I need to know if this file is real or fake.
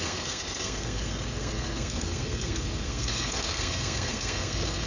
fake